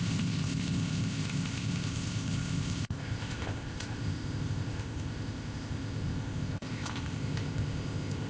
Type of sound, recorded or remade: remade